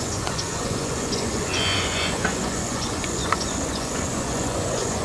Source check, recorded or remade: remade